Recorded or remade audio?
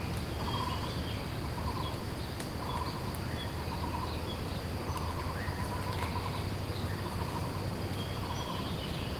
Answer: recorded